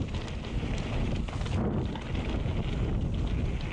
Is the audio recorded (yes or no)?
yes